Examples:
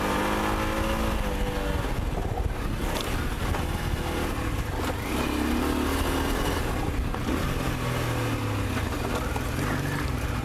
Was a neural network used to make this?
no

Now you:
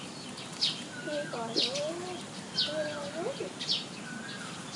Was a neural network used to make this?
no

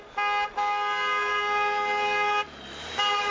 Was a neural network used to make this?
no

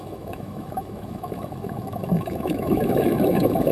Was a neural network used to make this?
yes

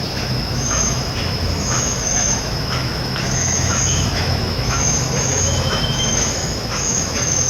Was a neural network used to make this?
yes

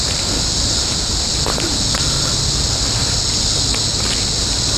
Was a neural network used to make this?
no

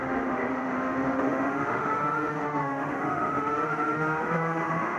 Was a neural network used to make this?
yes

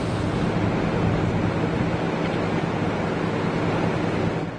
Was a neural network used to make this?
no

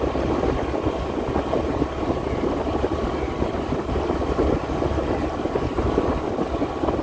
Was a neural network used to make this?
no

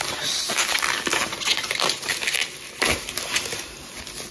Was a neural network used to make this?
no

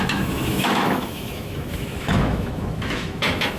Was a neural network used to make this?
yes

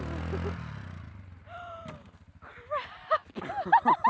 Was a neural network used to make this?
no